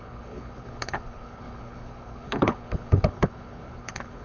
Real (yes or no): no